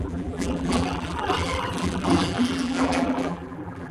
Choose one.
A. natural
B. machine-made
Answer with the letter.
B